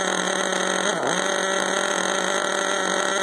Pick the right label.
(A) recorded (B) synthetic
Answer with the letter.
A